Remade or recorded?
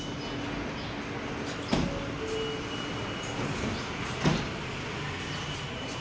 recorded